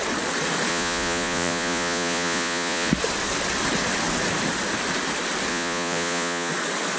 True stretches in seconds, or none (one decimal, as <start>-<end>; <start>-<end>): 0.0-0.7; 2.9-5.5; 6.5-7.0